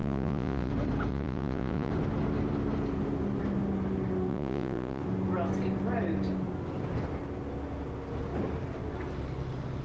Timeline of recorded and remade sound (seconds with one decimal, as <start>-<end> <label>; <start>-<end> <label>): 0.0-0.7 remade; 0.7-1.1 recorded; 1.1-1.9 remade; 1.9-4.3 recorded; 4.3-5.0 remade; 5.0-9.8 recorded

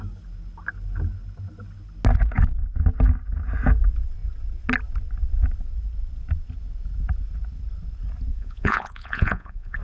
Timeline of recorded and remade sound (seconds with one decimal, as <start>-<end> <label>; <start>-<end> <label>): 0.0-8.3 recorded; 8.3-9.8 remade

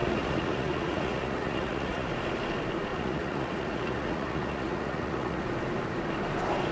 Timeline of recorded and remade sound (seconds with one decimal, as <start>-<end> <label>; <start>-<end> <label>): 0.0-2.1 remade; 2.1-2.9 recorded; 2.9-5.4 remade; 5.4-6.7 recorded

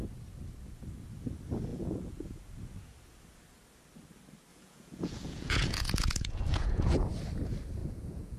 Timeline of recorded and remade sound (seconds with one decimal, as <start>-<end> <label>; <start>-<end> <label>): 0.0-1.7 recorded; 1.7-2.4 remade; 2.4-4.5 recorded; 4.5-7.1 remade; 7.1-7.8 recorded; 7.8-8.4 remade

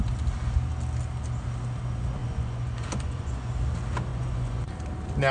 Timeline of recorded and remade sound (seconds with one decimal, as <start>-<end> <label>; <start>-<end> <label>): 0.0-2.2 recorded; 2.2-3.5 remade; 3.5-4.1 recorded; 4.1-4.7 remade; 4.7-5.3 recorded